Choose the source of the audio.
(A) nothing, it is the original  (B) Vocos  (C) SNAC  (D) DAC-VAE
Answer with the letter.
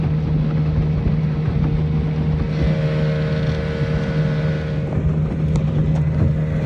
A